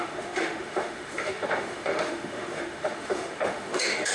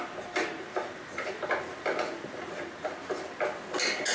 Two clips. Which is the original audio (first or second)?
second